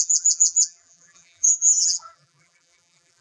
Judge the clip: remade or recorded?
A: remade